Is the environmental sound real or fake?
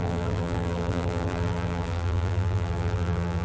fake